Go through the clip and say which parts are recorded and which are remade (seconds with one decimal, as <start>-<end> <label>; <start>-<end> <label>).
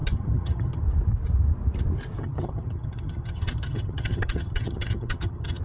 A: 0.0-0.8 remade; 0.8-2.2 recorded; 2.2-5.6 remade